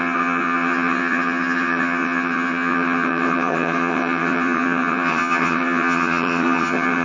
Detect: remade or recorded remade